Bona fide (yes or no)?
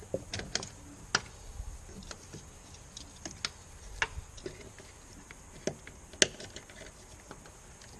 yes